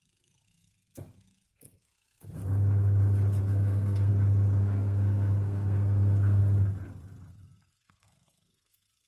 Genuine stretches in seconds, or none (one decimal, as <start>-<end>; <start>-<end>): 2.4-3.4; 4.1-4.6; 6.4-7.3